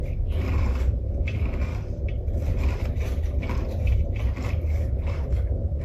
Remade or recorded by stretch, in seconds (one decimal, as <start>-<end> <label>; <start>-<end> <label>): 0.0-1.7 remade; 1.7-4.5 recorded; 4.5-5.8 remade